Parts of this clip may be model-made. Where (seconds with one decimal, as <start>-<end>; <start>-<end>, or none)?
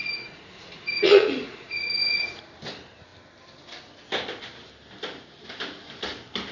0.0-2.4